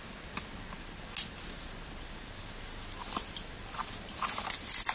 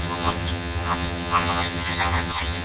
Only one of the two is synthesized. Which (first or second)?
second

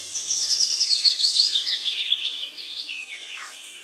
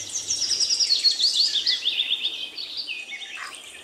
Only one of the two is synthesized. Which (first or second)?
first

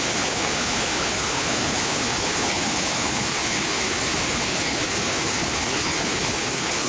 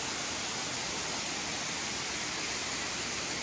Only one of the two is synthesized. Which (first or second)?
first